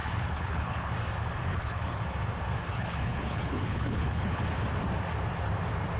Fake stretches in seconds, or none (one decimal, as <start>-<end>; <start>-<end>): 0.0-0.9; 1.5-2.0; 2.7-4.4